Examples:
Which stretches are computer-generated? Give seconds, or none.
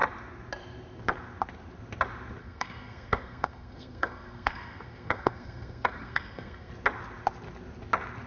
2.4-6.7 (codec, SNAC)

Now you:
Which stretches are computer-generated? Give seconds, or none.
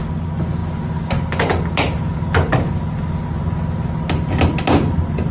none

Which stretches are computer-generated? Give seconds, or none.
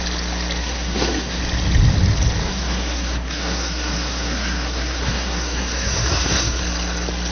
0.6-1.4 (codec, SNAC); 2.4-6.6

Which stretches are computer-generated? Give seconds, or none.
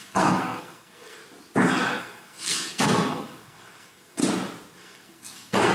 0.0-1.2 (codec, SNAC); 2.0-4.2; 4.8-5.7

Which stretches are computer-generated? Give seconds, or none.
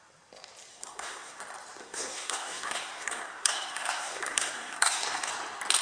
0.7-1.4 (codec, SNAC); 1.8-5.3